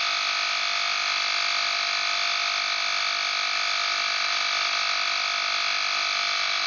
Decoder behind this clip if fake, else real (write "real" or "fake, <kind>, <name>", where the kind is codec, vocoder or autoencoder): real